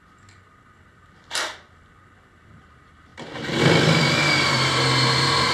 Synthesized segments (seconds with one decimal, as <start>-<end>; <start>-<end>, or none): 2.5-3.1; 4.2-5.5